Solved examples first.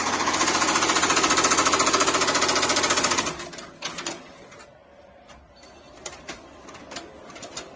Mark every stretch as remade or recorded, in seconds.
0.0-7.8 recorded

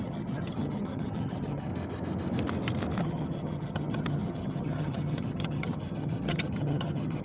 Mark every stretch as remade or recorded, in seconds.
0.0-1.7 remade; 1.7-3.0 recorded; 3.0-7.2 remade

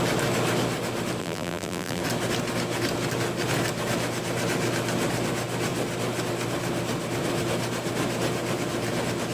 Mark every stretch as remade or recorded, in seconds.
0.0-1.2 recorded; 1.2-2.0 remade; 2.0-9.3 recorded

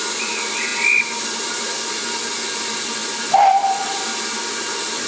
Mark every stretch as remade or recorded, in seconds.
0.0-5.1 recorded

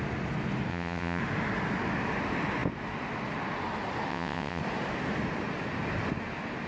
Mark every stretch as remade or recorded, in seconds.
0.0-0.7 recorded; 0.7-1.2 remade; 1.2-4.1 recorded; 4.1-4.6 remade; 4.6-6.7 recorded